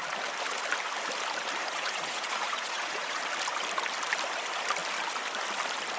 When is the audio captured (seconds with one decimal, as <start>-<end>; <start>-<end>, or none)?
0.0-1.6; 3.2-6.0